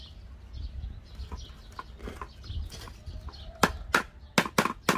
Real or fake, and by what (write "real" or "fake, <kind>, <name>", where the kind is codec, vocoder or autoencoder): real